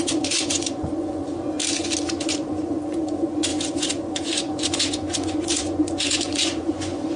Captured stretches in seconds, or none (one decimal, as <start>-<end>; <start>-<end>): 1.6-2.3